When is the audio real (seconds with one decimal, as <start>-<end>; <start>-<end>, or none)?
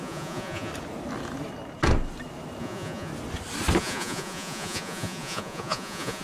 0.7-2.6; 3.1-3.8